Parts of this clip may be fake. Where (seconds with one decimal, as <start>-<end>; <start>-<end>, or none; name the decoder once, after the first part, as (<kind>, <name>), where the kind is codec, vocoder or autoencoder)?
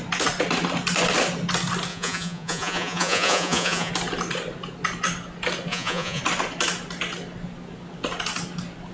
1.9-3.9 (vocoder, Vocos); 5.7-6.2